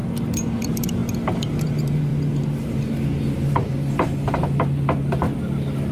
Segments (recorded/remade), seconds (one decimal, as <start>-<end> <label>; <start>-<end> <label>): 0.0-0.6 recorded; 0.6-1.0 remade; 1.0-1.6 recorded; 1.6-2.1 remade; 2.1-5.9 recorded